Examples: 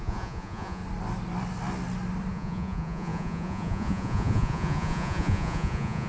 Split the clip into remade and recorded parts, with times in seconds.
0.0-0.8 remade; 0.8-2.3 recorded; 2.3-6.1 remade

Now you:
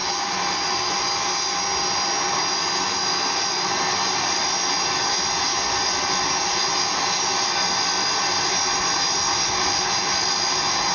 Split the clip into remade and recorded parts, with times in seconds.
0.0-10.9 recorded

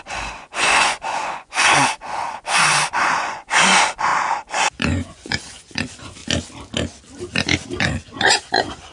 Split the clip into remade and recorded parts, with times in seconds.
0.0-4.1 remade; 4.1-4.7 recorded; 4.7-6.2 remade; 6.2-7.8 recorded; 7.8-8.9 remade

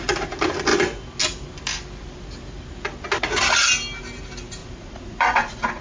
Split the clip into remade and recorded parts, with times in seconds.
0.0-4.6 recorded; 4.6-5.8 remade

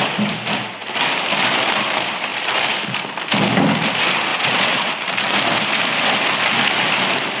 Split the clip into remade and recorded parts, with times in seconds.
0.0-4.3 recorded; 4.3-4.9 remade; 4.9-7.4 recorded

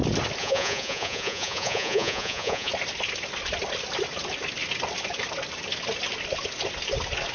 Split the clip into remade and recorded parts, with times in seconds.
0.0-0.4 recorded; 0.4-2.7 remade; 2.7-7.3 recorded

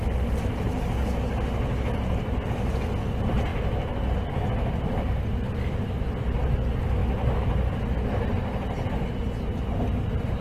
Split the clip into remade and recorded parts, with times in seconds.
0.0-10.4 recorded